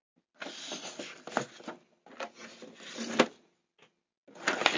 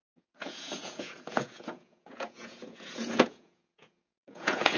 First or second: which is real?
first